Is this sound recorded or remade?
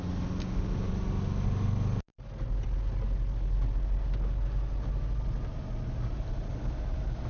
recorded